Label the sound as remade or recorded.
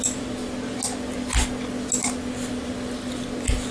recorded